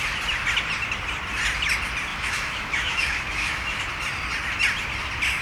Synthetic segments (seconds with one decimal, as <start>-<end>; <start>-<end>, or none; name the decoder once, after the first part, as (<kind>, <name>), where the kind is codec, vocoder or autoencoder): 2.1-3.8 (autoencoder, DAC-VAE)